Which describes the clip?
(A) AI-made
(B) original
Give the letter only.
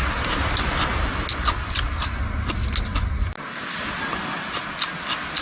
B